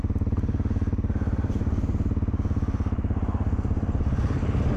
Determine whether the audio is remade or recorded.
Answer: recorded